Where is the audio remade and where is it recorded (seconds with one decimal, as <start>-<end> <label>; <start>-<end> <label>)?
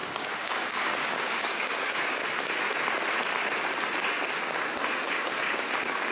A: 0.0-2.2 remade; 2.2-5.1 recorded; 5.1-6.1 remade